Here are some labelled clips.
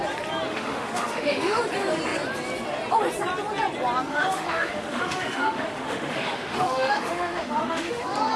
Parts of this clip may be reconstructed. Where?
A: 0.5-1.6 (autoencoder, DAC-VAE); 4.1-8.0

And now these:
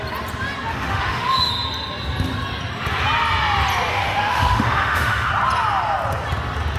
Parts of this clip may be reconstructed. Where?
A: 0.7-1.5 (autoencoder, DAC-VAE); 3.9-5.3